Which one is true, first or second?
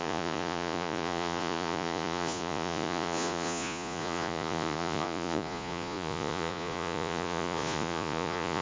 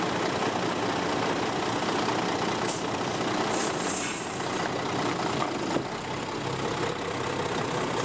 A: second